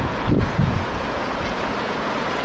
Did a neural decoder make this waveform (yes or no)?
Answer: yes